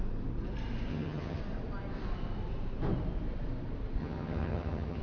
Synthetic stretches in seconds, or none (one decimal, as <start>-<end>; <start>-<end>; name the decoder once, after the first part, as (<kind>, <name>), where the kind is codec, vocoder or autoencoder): 0.9-1.4 (vocoder, HiFi-GAN); 4.0-5.0